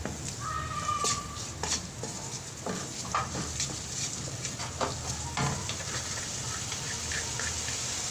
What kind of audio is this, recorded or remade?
recorded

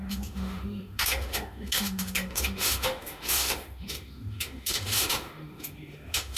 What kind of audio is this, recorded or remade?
remade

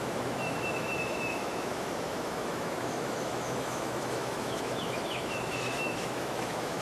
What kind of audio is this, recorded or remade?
remade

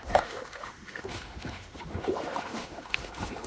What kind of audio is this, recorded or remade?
remade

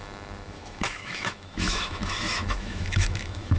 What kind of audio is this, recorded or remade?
remade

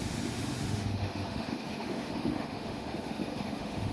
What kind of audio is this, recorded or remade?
remade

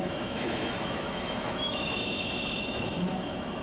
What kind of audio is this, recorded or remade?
remade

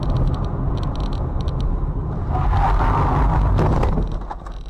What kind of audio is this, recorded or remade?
recorded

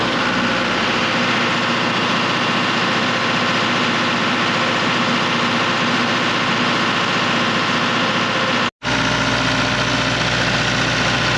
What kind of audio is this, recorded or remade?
recorded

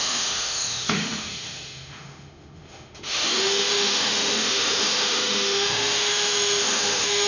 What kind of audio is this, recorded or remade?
remade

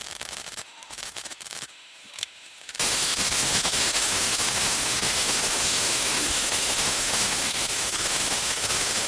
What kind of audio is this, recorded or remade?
remade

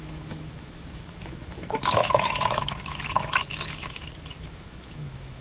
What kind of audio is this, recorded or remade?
remade